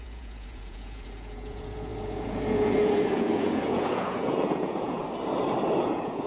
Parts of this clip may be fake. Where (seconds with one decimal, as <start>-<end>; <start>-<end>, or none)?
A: 0.0-5.0; 5.8-6.3